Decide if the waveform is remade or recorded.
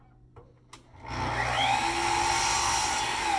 recorded